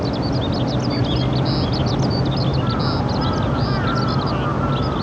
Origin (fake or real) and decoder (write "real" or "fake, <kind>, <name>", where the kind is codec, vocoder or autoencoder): real